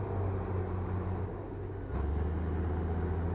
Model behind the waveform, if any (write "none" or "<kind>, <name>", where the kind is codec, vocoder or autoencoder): none